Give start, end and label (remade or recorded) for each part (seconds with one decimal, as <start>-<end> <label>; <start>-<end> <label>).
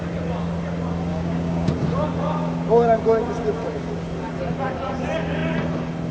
0.0-1.1 recorded; 1.1-1.7 remade; 1.7-6.1 recorded